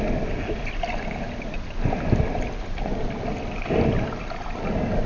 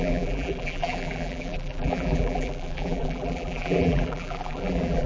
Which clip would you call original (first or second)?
first